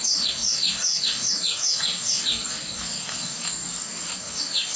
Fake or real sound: fake